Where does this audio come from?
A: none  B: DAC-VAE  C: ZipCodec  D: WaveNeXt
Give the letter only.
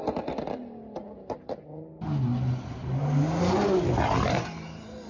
A